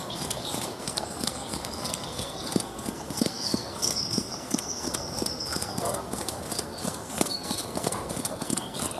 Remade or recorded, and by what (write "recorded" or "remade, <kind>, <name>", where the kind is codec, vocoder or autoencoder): remade, codec, SNAC